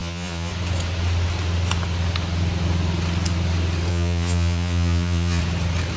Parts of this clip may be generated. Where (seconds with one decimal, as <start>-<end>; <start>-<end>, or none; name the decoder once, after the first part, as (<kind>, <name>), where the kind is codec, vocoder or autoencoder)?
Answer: 0.0-0.5 (vocoder, Vocos); 3.9-5.4